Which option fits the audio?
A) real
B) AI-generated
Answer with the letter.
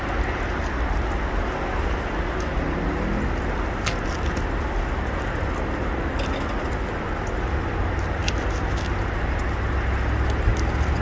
A